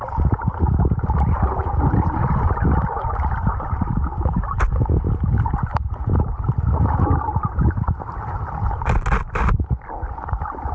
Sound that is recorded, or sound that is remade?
recorded